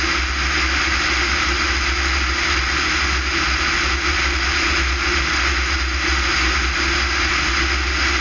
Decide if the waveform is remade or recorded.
recorded